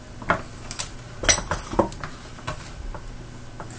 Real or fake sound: real